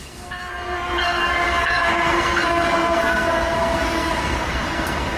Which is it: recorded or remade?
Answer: remade